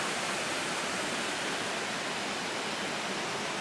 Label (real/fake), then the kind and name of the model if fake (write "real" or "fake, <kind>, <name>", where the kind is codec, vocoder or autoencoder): real